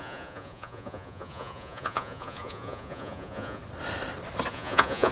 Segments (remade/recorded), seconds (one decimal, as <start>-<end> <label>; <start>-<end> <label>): 0.0-3.6 remade; 3.6-4.5 recorded; 4.5-5.1 remade